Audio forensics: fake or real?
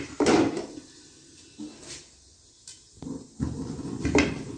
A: real